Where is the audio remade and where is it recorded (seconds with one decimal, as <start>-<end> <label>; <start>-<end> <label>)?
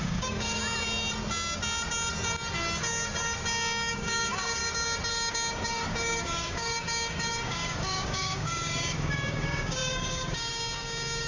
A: 0.0-0.6 remade; 0.6-3.9 recorded; 3.9-4.6 remade; 4.6-5.1 recorded; 5.1-11.3 remade